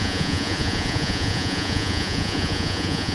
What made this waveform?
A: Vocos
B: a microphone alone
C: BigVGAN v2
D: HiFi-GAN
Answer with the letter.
A